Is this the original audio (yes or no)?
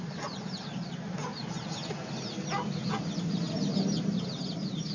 yes